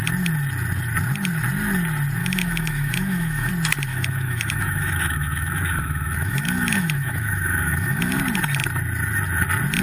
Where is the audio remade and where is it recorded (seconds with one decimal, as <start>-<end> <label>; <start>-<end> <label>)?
0.0-2.2 recorded; 2.2-3.5 remade; 3.5-3.9 recorded; 3.9-8.2 remade; 8.2-9.8 recorded